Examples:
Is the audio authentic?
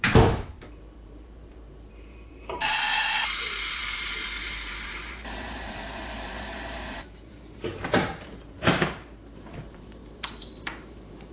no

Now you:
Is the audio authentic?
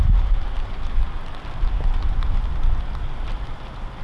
yes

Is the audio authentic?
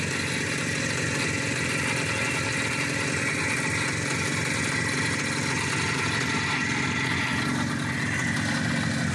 yes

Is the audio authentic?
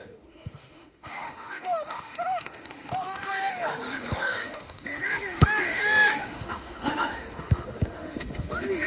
no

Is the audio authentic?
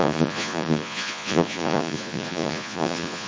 no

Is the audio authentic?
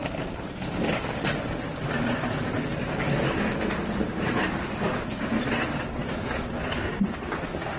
no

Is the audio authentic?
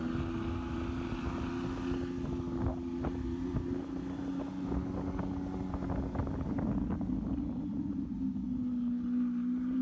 yes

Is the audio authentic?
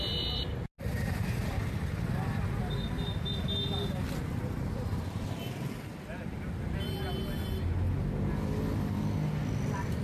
yes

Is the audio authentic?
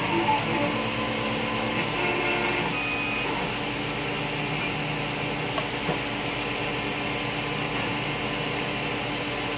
yes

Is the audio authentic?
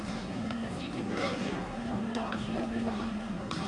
no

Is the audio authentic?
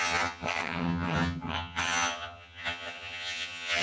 no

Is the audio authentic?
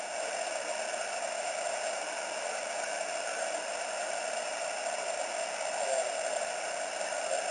yes